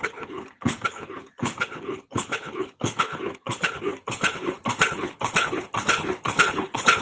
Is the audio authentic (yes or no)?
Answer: no